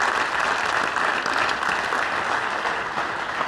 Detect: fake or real real